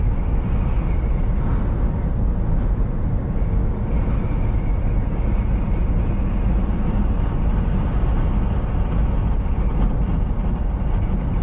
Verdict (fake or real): real